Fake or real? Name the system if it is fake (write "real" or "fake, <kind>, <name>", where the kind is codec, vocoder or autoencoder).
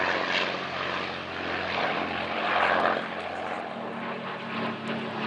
real